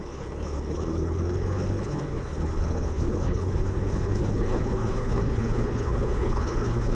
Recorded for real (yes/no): no